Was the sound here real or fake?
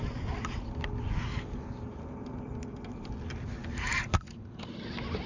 real